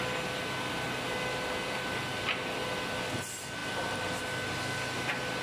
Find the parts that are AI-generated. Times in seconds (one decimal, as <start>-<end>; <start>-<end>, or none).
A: none